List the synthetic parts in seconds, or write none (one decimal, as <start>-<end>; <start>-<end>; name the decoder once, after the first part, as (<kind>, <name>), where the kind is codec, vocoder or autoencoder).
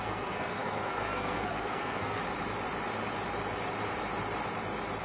0.0-2.2 (codec, SNAC)